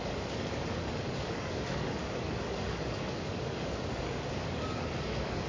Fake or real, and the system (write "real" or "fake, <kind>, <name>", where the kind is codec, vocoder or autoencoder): fake, codec, DAC